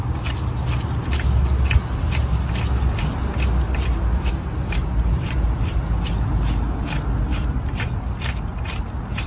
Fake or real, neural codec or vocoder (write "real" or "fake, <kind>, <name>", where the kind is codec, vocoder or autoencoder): real